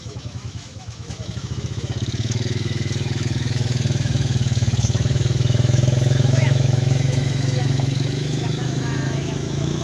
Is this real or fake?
fake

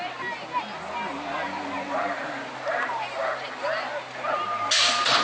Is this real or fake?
real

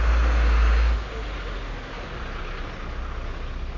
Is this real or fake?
real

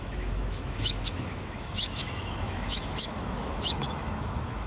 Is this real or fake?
fake